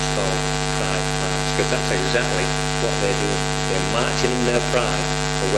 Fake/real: real